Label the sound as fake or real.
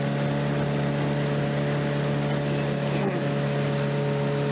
real